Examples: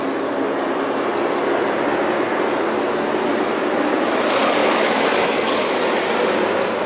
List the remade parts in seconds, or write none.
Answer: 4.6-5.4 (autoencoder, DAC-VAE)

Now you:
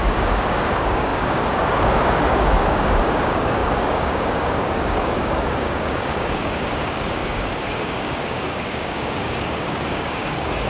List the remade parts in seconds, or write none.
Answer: 0.0-10.7 (codec, DAC)

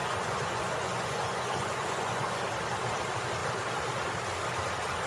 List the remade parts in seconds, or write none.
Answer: 0.0-2.4 (vocoder, Vocos)

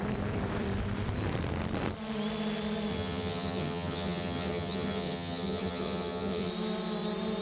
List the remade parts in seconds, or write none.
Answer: 2.9-6.5 (vocoder, HiFi-GAN)

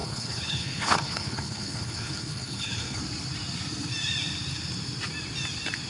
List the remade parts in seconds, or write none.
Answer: 0.0-3.0 (codec, HILCodec)